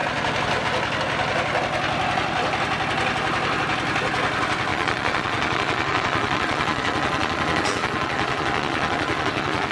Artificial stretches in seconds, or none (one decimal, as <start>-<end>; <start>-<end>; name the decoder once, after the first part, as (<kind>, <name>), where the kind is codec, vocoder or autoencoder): 4.7-9.7 (vocoder, Vocos)